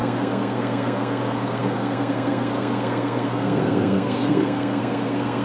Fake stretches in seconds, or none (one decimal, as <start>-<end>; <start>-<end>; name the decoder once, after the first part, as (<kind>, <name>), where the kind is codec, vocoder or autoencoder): 0.0-5.4 (codec, SNAC)